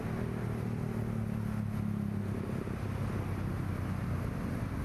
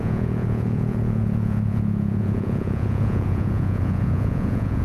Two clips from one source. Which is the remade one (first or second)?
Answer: second